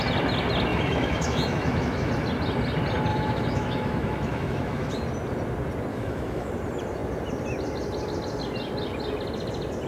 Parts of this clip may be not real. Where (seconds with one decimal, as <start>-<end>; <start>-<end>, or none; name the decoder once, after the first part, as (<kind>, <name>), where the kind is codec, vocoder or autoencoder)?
0.7-2.1 (autoencoder, DAC-VAE); 3.1-4.9; 5.9-6.5